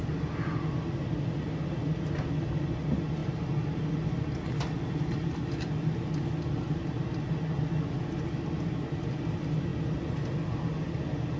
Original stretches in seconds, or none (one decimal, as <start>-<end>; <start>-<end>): 0.0-11.4